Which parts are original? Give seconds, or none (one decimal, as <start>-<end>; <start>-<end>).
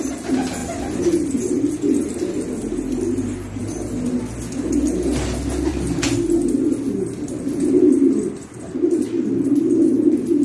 0.0-10.4